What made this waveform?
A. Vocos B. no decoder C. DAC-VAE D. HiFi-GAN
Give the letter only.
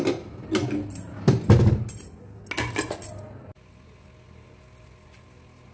B